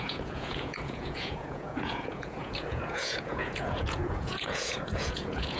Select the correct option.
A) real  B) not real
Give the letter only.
B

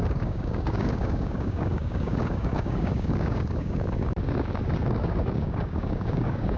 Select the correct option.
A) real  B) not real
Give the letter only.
B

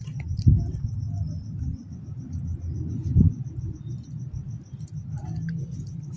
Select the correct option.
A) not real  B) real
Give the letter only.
B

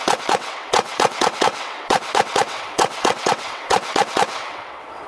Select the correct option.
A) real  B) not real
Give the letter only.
B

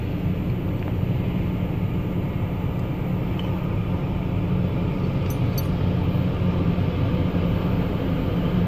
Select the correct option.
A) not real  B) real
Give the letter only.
B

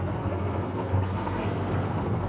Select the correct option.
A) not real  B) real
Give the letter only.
A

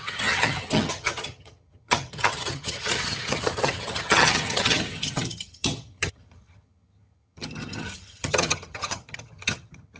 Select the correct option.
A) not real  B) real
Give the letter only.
A